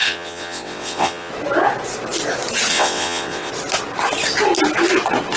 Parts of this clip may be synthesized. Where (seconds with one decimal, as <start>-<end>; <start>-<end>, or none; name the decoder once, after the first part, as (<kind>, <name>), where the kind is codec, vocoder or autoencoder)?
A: 0.0-1.3 (vocoder, WaveNeXt); 2.7-3.5